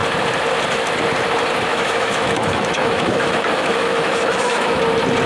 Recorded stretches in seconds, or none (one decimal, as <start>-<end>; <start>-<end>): 0.0-1.7; 4.8-5.3